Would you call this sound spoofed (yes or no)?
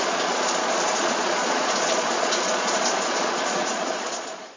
yes